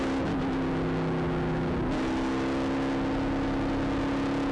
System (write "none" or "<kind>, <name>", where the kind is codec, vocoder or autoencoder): none